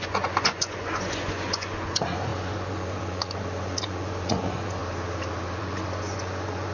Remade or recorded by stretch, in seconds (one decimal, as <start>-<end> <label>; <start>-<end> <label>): 0.0-4.8 remade; 4.8-5.6 recorded; 5.6-6.7 remade